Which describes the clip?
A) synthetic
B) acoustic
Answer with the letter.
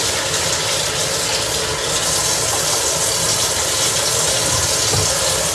B